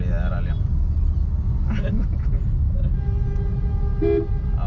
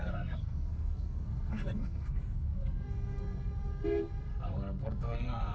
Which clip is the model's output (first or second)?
second